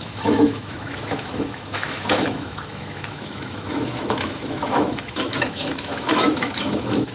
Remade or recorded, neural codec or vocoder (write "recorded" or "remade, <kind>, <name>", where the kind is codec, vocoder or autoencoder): remade, autoencoder, DAC-VAE